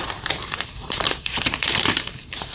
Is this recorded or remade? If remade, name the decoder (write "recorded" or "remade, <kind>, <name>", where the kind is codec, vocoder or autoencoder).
remade, vocoder, BigVGAN v2